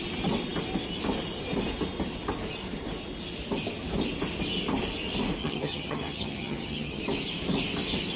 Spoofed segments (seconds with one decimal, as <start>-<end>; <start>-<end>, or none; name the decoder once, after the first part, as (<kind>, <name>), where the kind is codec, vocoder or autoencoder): 5.4-7.0 (vocoder, HiFi-GAN)